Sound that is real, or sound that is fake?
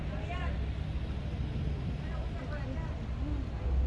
real